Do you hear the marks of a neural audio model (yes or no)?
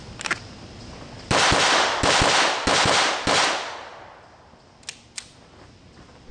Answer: no